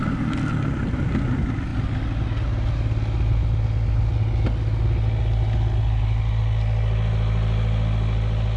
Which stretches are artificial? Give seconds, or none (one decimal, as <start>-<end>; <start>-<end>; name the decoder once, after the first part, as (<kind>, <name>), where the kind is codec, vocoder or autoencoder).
none